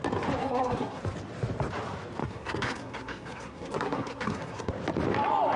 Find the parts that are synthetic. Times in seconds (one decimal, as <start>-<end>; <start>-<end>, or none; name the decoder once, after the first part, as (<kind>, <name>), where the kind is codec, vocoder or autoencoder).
0.4-1.0 (codec, SNAC); 2.2-4.7